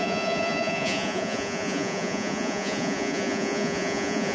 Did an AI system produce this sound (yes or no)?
yes